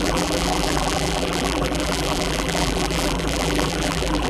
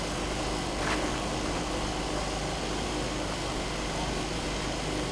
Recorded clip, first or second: second